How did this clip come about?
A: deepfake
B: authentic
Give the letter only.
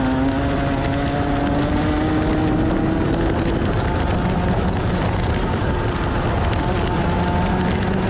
B